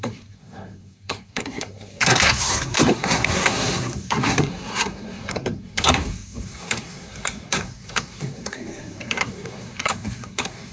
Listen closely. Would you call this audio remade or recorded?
remade